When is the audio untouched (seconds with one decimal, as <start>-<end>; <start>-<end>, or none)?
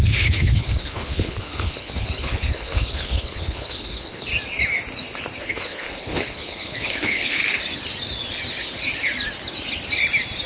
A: 4.3-5.4; 7.4-10.5